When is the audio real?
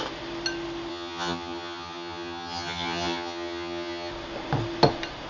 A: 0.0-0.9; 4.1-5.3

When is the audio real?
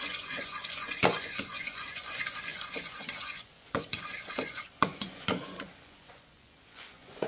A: none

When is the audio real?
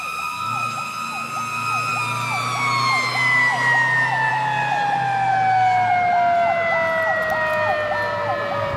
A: 0.0-8.8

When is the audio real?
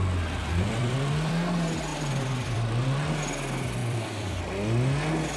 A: 0.0-0.4; 1.3-1.9; 3.1-3.8; 4.4-5.4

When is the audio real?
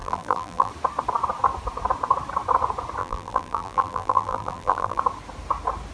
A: 0.7-3.0; 5.0-5.9